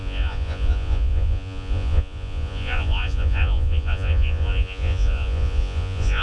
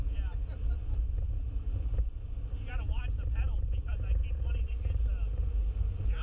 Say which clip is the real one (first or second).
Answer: second